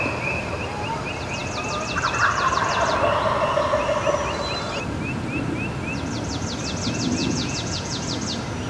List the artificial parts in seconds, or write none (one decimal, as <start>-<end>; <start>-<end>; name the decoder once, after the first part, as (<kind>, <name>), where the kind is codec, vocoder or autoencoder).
7.2-8.0 (vocoder, Vocos)